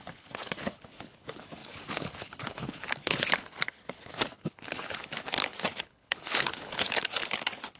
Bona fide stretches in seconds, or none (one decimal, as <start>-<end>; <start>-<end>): none